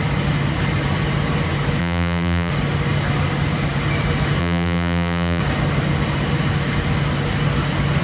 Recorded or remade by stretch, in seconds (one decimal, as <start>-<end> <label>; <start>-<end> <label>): 0.0-1.8 recorded; 1.8-2.5 remade; 2.5-4.4 recorded; 4.4-5.4 remade; 5.4-8.0 recorded